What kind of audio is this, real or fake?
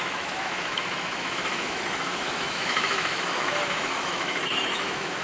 fake